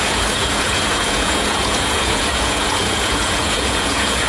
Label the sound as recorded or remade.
remade